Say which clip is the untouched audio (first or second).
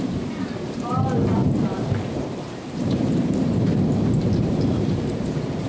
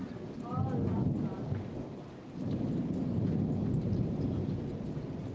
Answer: second